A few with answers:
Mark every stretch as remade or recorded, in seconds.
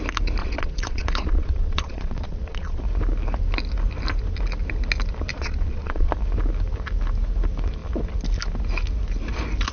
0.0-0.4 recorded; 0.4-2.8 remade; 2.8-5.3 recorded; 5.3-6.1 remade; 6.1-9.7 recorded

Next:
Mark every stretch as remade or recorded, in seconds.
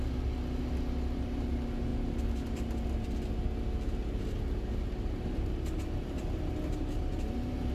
0.0-7.7 recorded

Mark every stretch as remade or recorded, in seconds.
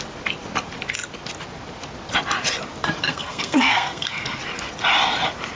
0.0-3.0 recorded; 3.0-4.4 remade; 4.4-5.6 recorded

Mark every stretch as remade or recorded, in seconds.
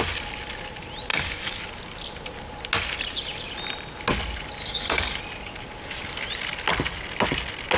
0.0-1.1 recorded; 1.1-1.6 remade; 1.6-4.6 recorded; 4.6-5.2 remade; 5.2-7.8 recorded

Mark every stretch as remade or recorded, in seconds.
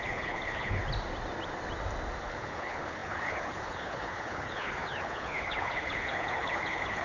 0.0-0.8 remade; 0.8-2.2 recorded; 2.2-7.0 remade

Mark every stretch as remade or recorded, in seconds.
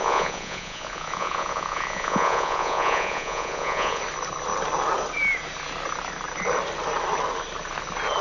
0.0-4.0 remade; 4.0-8.2 recorded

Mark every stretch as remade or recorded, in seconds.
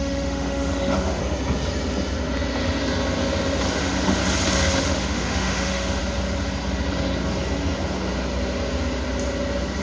0.0-1.2 remade; 1.2-3.8 recorded; 3.8-4.2 remade; 4.2-4.8 recorded; 4.8-6.0 remade; 6.0-9.8 recorded